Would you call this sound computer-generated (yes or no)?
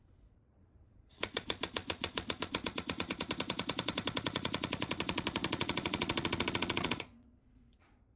yes